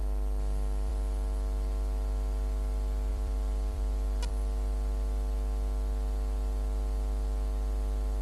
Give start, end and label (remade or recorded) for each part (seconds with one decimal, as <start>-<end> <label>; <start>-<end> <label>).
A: 0.0-3.1 recorded; 3.1-4.3 remade; 4.3-8.2 recorded